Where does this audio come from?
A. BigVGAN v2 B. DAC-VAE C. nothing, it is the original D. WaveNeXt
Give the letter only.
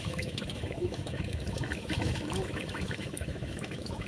B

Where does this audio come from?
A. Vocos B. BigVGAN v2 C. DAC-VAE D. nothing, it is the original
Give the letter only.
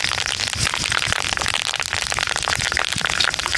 D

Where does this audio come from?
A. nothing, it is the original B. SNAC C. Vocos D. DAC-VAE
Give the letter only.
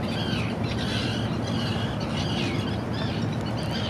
A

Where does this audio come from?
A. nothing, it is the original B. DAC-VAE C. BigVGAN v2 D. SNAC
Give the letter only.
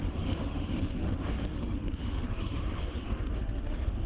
B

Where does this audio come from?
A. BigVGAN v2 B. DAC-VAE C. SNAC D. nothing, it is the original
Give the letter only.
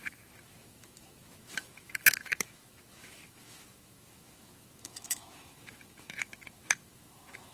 B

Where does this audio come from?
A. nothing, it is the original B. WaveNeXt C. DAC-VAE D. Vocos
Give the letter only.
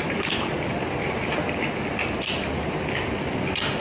A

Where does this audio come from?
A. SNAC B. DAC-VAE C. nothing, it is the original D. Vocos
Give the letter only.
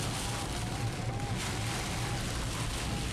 C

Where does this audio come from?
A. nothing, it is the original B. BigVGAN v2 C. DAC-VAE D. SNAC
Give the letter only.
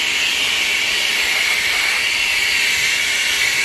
A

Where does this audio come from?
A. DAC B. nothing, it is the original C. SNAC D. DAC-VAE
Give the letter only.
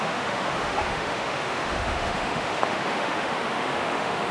D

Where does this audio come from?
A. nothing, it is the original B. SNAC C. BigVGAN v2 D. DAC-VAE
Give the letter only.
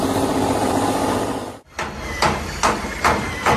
A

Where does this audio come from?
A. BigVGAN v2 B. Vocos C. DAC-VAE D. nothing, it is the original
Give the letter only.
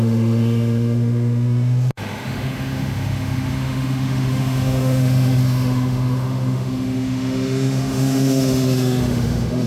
C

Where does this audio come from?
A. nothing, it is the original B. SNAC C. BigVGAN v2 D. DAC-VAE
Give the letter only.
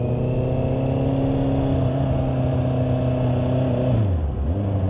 A